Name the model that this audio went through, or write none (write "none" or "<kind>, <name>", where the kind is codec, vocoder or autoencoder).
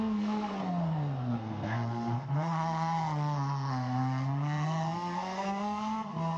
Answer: codec, SNAC